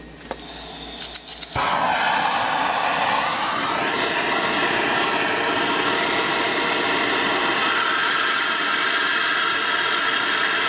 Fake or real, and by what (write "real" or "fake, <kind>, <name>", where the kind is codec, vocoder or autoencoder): real